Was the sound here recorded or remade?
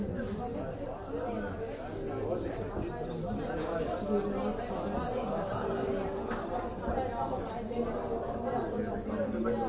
recorded